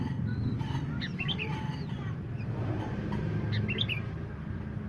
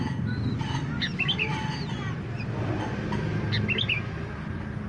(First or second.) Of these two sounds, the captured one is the second